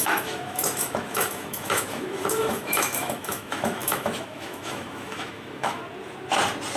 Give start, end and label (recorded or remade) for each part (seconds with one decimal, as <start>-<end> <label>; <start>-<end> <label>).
0.0-5.8 remade; 5.8-6.8 recorded